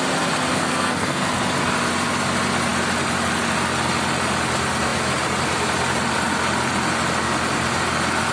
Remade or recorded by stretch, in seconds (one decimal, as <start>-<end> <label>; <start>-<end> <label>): 0.0-0.5 recorded; 0.5-1.3 remade; 1.3-8.3 recorded